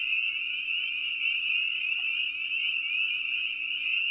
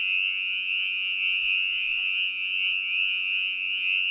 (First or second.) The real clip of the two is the first